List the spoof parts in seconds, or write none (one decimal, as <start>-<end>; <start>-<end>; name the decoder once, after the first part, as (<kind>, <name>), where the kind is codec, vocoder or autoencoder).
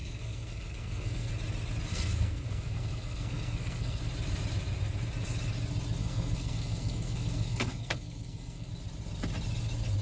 0.0-1.3 (codec, SNAC); 1.9-4.0; 6.0-8.7